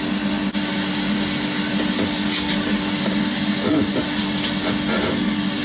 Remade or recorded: recorded